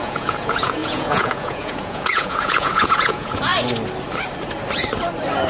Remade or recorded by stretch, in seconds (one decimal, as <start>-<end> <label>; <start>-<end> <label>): 0.0-3.5 remade; 3.5-5.5 recorded